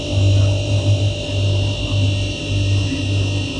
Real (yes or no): yes